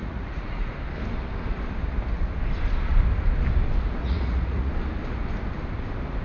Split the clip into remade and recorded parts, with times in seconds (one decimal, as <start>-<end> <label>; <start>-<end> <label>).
0.0-0.7 remade; 0.7-4.0 recorded; 4.0-4.7 remade; 4.7-6.2 recorded